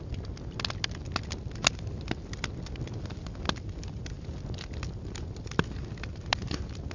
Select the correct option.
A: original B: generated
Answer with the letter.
A